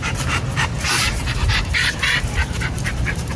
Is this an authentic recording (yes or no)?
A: no